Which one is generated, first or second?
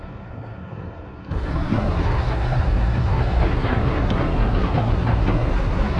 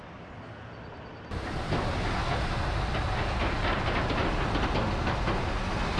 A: first